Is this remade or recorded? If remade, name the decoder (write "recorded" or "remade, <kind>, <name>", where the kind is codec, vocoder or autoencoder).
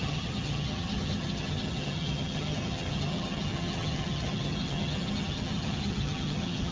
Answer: remade, vocoder, HiFi-GAN